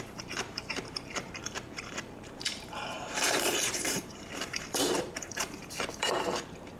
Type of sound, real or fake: fake